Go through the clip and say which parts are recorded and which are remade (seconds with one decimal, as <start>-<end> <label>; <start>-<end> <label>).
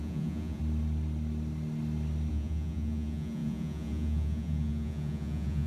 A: 0.0-0.6 remade; 0.6-2.3 recorded; 2.3-5.7 remade